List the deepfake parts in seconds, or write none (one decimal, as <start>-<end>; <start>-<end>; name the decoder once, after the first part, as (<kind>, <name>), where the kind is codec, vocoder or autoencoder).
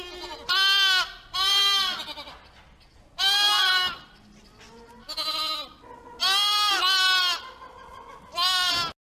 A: none